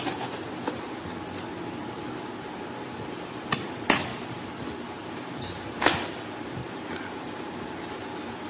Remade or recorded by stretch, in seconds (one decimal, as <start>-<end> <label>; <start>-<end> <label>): 0.0-8.5 recorded